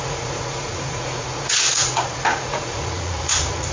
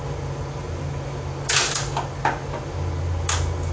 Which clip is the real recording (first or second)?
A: second